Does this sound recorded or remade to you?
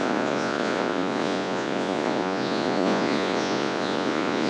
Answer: remade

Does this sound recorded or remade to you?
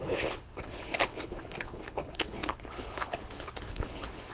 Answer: remade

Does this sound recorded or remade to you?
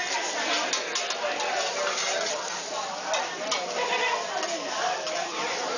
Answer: recorded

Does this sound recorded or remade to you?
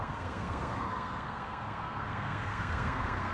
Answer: remade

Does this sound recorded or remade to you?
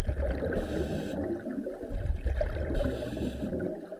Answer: recorded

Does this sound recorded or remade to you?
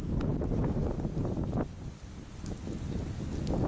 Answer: recorded